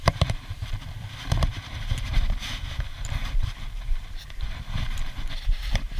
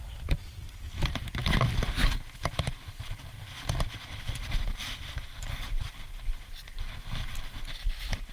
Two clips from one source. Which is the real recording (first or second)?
second